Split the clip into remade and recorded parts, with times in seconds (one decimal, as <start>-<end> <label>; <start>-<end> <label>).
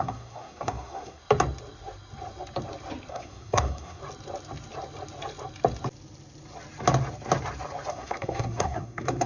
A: 0.0-1.2 remade; 1.2-3.1 recorded; 3.1-4.0 remade; 4.0-7.9 recorded; 7.9-9.3 remade